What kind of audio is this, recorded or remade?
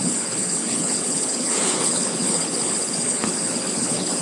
remade